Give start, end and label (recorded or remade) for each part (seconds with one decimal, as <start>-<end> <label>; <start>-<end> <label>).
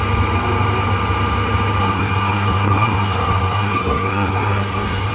0.0-1.8 recorded; 1.8-5.1 remade